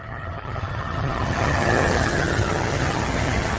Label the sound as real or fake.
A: fake